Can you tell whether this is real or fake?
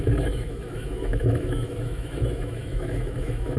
fake